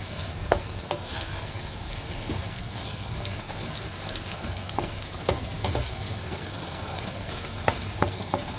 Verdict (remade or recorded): remade